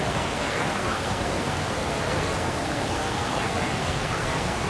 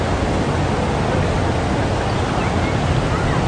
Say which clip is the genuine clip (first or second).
second